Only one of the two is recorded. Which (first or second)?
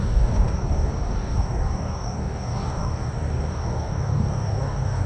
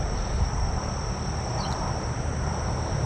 second